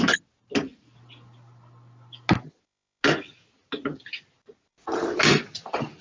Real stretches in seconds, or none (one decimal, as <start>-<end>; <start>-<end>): 0.0-6.0